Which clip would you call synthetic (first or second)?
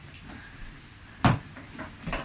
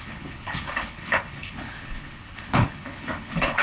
second